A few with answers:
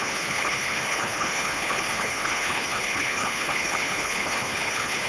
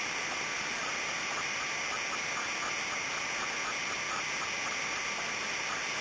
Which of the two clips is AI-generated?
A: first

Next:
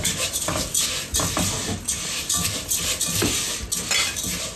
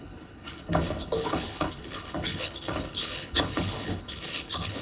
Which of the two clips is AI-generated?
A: second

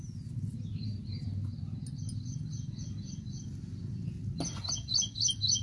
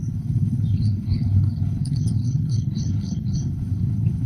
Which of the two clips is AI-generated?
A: second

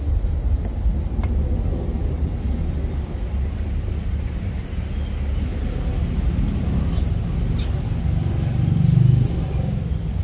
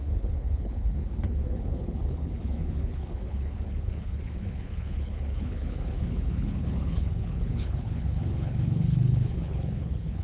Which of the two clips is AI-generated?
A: second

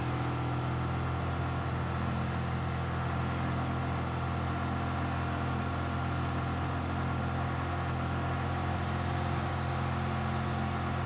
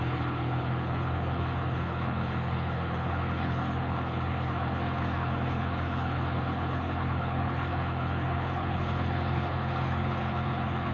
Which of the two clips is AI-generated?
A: second